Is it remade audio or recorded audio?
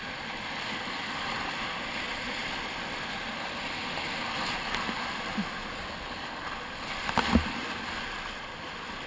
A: recorded